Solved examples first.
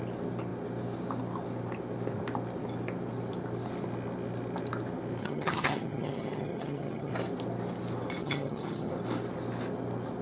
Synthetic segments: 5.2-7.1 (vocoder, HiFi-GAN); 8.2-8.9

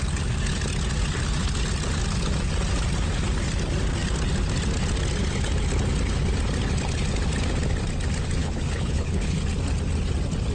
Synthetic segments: 8.4-9.4 (codec, HILCodec)

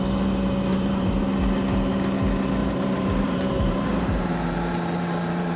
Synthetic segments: 0.7-1.4 (vocoder, BigVGAN v2); 2.6-5.6

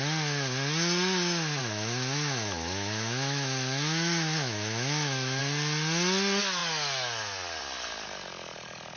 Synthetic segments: 1.6-5.4 (autoencoder, DAC-VAE)

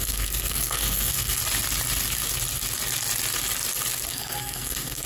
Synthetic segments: 0.0-1.4 (codec, SNAC); 4.1-5.1